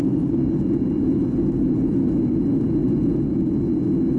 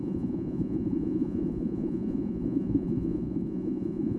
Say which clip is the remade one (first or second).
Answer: second